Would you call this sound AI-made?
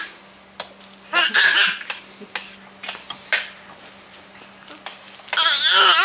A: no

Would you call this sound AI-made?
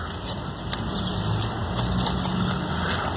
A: no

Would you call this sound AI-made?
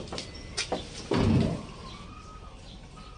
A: no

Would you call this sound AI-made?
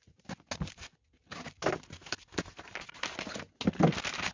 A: no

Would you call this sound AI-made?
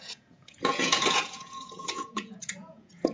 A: yes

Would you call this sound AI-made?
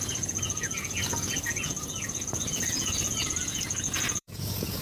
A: yes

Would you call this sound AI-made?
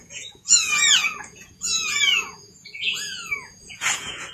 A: yes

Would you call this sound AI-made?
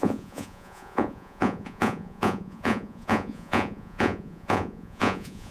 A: yes